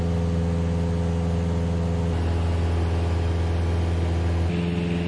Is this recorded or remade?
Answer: recorded